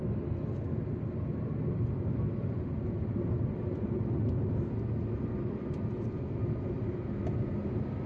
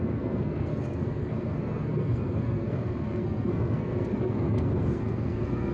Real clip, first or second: first